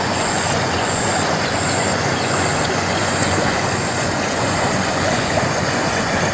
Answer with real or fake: fake